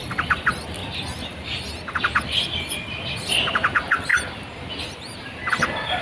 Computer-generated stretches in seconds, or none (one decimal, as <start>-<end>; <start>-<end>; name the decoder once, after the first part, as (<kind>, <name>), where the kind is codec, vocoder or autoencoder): none